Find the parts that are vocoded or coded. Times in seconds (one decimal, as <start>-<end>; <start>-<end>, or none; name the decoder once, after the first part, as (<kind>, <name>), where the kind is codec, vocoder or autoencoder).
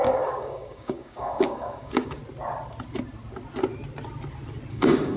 0.0-2.2 (codec, DAC); 4.7-5.2